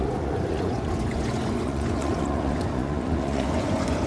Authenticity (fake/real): fake